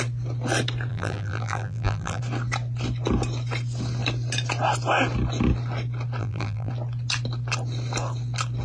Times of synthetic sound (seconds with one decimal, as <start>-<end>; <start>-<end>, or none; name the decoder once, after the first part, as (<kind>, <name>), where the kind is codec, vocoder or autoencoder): 0.9-2.2 (vocoder, BigVGAN v2); 6.2-6.7